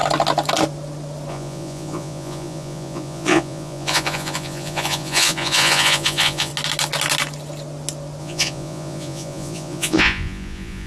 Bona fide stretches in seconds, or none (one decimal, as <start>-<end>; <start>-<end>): 0.0-1.3; 6.5-8.2